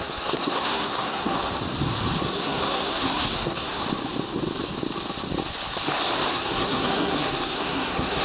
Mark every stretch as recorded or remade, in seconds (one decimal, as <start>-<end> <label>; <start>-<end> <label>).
0.0-1.5 remade; 1.5-2.2 recorded; 2.2-3.8 remade; 3.8-6.3 recorded; 6.3-8.2 remade